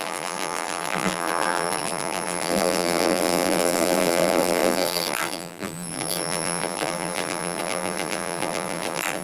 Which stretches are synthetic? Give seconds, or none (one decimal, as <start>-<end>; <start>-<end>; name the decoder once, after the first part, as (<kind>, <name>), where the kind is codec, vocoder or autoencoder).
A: 0.0-9.2 (vocoder, BigVGAN v2)